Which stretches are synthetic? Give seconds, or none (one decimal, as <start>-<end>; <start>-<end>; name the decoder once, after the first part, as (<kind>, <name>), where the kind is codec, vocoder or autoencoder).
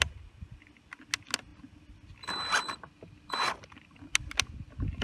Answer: none